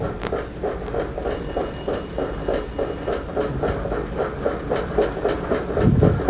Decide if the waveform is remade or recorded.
recorded